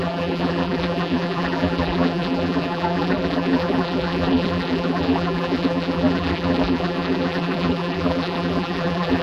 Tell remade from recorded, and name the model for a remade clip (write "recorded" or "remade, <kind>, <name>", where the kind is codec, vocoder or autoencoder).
remade, vocoder, BigVGAN v2